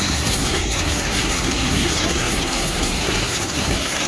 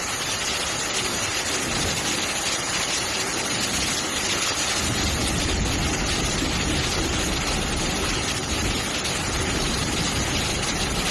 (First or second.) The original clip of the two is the second